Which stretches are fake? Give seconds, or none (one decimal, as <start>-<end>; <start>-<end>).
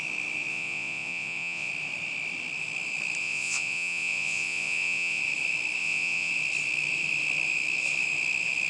0.5-1.7; 3.2-5.2; 5.8-6.3